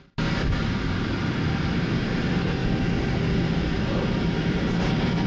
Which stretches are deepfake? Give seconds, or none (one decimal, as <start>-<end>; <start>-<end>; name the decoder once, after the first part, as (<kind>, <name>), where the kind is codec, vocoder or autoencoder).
none